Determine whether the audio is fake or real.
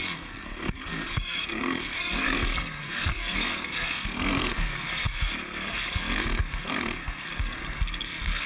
fake